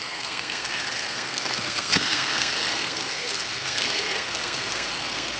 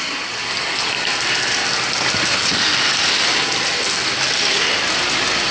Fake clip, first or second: first